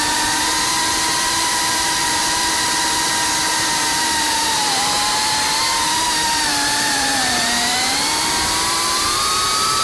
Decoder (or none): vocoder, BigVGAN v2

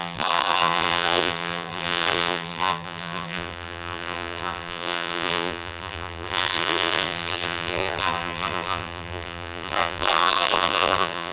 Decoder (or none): vocoder, BigVGAN v2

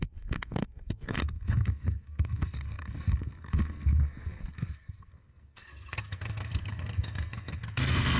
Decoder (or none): codec, SNAC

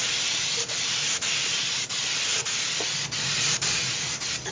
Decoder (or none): vocoder, BigVGAN v2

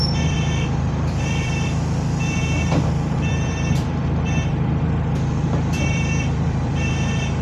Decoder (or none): vocoder, BigVGAN v2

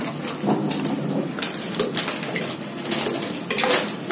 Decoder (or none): none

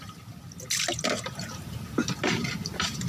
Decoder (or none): none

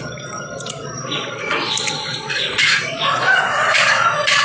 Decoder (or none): vocoder, Vocos